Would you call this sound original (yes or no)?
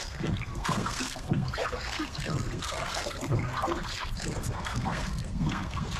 no